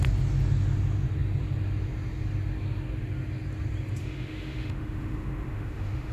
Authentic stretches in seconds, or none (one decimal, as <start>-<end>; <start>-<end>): 0.0-4.0